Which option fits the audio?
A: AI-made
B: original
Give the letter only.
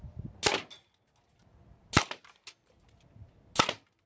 B